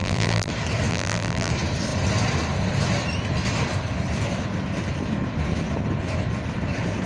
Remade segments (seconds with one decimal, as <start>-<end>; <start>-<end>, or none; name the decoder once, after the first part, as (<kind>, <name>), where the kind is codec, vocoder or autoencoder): 0.0-0.5 (vocoder, BigVGAN v2); 0.9-1.5